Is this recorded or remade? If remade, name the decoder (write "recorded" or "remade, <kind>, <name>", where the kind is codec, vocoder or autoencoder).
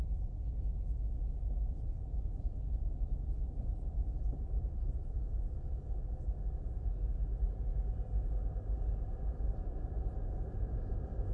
recorded